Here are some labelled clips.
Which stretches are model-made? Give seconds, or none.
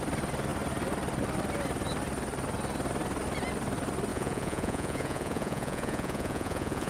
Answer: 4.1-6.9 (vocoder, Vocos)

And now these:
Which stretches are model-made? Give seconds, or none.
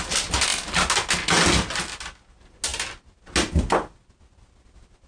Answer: none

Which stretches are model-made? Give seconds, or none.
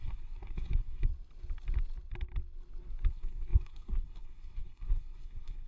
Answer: 0.0-1.1 (codec, SNAC); 3.1-5.7